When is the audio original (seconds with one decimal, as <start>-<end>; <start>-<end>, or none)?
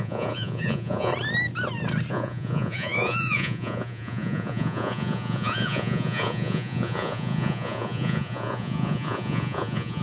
1.1-2.1